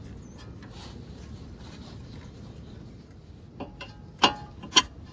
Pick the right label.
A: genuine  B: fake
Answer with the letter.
A